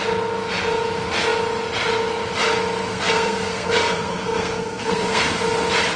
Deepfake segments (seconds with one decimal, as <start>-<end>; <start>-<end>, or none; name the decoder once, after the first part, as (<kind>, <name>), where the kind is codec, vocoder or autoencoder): 2.9-5.2 (codec, SNAC)